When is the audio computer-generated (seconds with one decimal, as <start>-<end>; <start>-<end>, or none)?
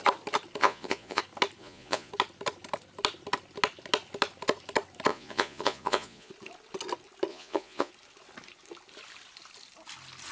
0.6-1.2; 1.6-2.1; 5.1-6.3; 7.3-7.9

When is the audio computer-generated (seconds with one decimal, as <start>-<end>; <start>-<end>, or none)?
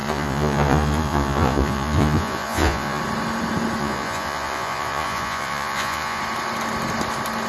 0.0-3.0; 3.8-6.2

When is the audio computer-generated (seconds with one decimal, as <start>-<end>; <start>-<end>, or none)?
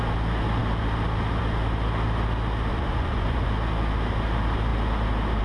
2.7-3.5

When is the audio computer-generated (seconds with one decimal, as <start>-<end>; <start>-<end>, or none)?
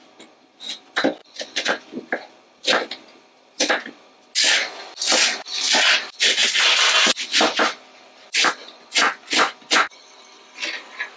1.2-1.8; 8.6-10.0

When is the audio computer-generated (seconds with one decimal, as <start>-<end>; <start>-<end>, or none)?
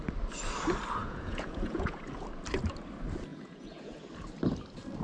1.0-2.0; 3.3-4.1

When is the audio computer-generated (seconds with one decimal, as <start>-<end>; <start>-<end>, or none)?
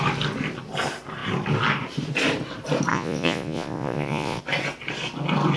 2.9-4.4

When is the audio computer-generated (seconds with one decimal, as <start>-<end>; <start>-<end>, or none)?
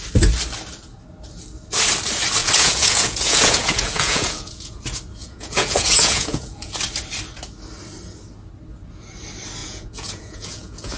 2.4-4.8; 5.2-6.7; 9.6-11.0